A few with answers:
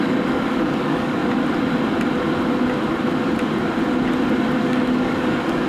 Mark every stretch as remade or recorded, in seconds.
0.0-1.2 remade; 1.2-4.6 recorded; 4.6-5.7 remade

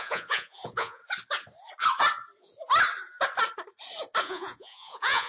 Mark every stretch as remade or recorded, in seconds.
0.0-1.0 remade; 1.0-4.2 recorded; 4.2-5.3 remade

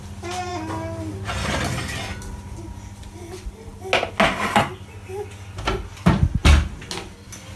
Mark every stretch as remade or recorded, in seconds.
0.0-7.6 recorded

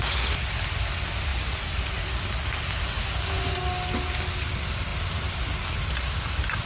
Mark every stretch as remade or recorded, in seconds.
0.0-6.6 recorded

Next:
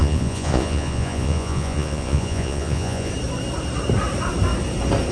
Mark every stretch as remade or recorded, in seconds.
0.0-3.1 remade; 3.1-5.1 recorded